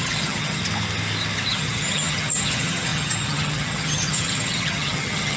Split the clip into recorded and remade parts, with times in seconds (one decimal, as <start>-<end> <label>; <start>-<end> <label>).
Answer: 0.0-0.6 remade; 0.6-1.5 recorded; 1.5-5.4 remade